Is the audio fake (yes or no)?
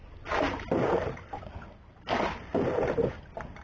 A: no